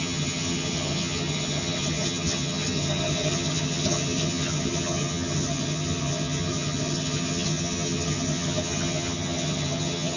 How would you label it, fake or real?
fake